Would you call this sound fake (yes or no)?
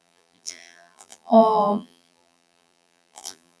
yes